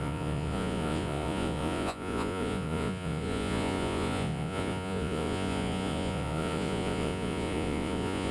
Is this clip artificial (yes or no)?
yes